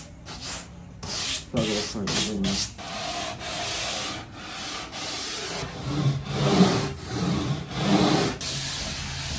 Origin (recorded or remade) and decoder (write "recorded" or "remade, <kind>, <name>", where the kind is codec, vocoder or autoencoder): recorded